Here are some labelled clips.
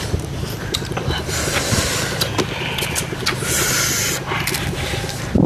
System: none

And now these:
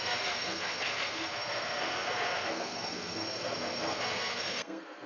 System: codec, SNAC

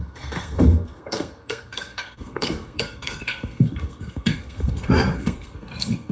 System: codec, SNAC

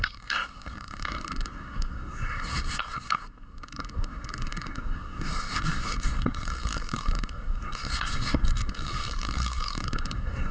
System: codec, SNAC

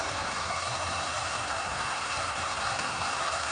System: codec, SNAC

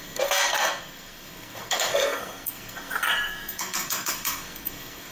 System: codec, SNAC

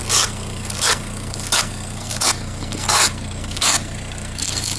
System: codec, SNAC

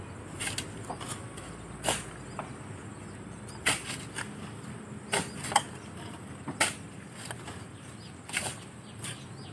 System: none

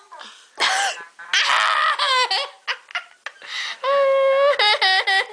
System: none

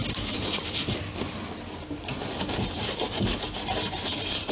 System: none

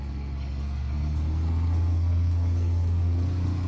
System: codec, SNAC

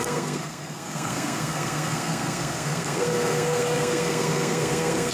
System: codec, SNAC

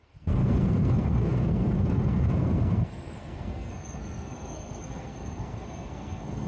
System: codec, SNAC